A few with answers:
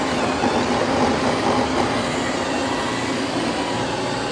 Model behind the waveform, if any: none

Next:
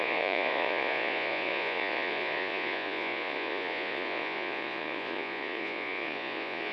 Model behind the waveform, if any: vocoder, Vocos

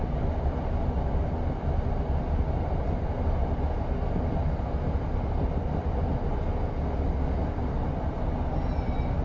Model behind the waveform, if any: none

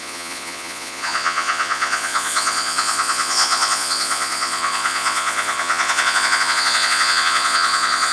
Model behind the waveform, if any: vocoder, Vocos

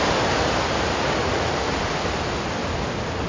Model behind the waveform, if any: none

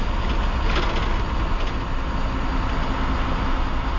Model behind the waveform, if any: none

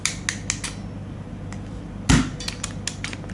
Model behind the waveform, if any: none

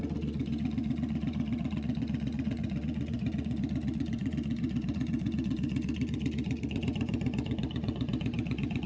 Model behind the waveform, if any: vocoder, Vocos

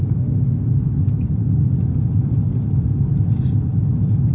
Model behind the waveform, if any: none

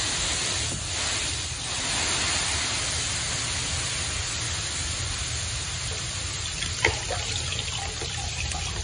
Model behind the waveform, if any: none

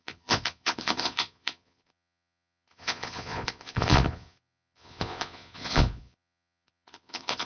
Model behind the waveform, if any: vocoder, Vocos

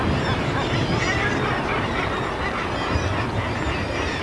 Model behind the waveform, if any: none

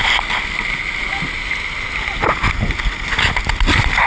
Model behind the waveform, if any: none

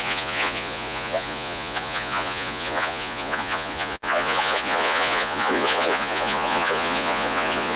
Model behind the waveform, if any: vocoder, Vocos